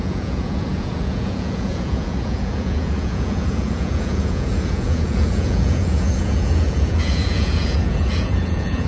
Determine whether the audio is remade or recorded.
remade